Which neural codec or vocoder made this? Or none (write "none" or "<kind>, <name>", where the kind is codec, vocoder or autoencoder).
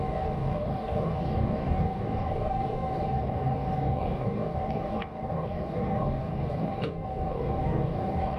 codec, DAC